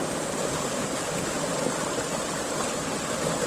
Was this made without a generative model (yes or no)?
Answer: yes